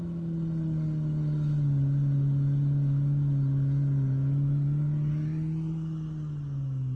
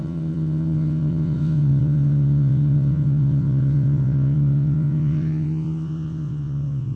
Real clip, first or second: first